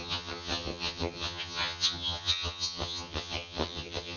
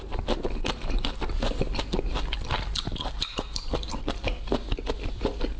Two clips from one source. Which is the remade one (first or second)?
first